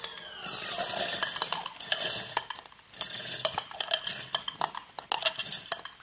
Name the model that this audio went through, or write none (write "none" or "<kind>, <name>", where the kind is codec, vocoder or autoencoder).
none